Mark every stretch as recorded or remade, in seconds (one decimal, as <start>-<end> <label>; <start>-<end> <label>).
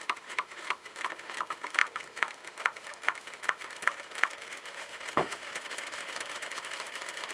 0.0-7.3 remade